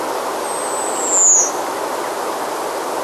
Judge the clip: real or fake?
real